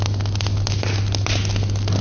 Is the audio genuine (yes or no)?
yes